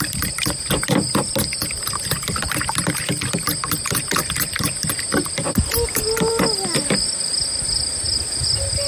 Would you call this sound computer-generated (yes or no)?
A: no